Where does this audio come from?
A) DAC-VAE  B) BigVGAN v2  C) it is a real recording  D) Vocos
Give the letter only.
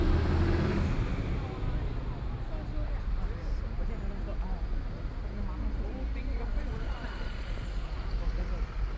C